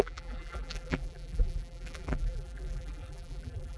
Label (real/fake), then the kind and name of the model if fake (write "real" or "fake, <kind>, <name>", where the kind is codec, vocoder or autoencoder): fake, vocoder, BigVGAN v2